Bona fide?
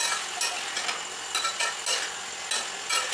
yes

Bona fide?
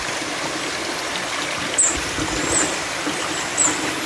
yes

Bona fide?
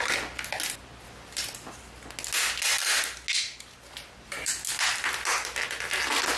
yes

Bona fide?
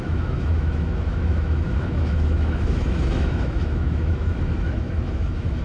no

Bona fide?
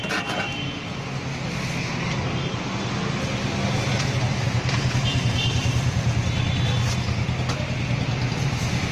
yes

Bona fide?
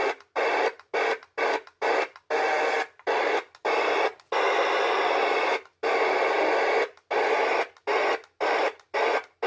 yes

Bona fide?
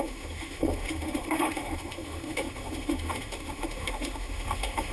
no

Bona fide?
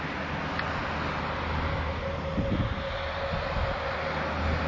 yes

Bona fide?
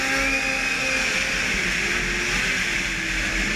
yes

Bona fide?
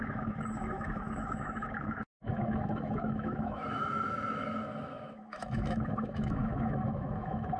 no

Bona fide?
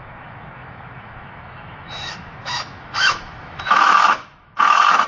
no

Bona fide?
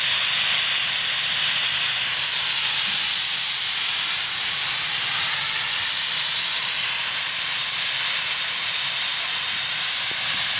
yes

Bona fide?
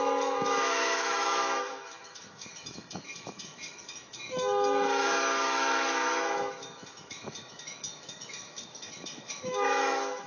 no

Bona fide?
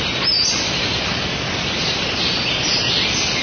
yes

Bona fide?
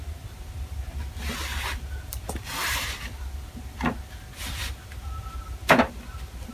yes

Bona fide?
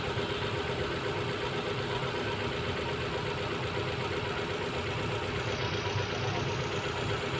yes